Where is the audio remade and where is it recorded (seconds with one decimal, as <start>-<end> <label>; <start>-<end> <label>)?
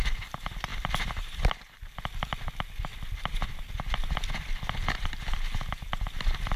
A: 0.0-6.6 recorded